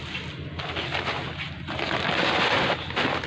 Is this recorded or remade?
recorded